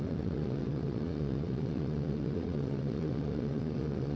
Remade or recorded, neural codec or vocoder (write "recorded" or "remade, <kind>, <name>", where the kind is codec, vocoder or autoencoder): remade, vocoder, WaveNeXt